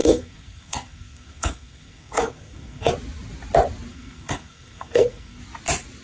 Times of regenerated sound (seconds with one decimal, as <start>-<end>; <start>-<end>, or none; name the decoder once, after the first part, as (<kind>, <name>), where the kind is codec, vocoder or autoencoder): 0.0-2.9 (codec, SNAC); 3.9-5.4